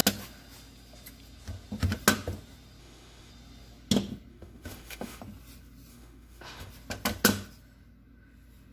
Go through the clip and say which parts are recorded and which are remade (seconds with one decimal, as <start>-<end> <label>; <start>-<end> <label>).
0.0-2.8 recorded; 2.8-3.3 remade; 3.3-4.3 recorded; 4.3-5.2 remade; 5.2-5.9 recorded; 5.9-6.7 remade; 6.7-8.7 recorded